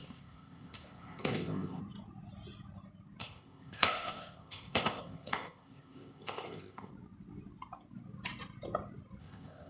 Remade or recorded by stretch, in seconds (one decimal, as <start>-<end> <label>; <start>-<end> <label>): 0.0-1.8 remade; 1.8-3.2 recorded; 3.2-6.9 remade; 6.9-9.2 recorded; 9.2-9.7 remade